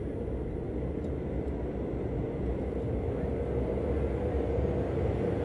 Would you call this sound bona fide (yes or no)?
yes